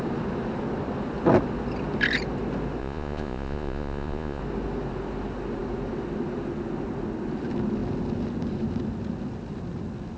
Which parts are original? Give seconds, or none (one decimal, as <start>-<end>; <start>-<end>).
0.0-2.8; 4.4-10.2